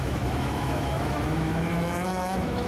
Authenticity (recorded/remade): remade